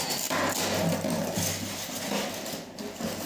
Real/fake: real